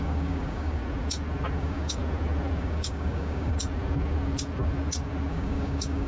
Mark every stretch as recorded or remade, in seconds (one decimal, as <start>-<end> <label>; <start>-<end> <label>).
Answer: 0.0-0.8 remade; 0.8-1.6 recorded; 1.6-2.0 remade; 2.0-2.6 recorded; 2.6-3.5 remade; 3.5-5.3 recorded; 5.3-6.1 remade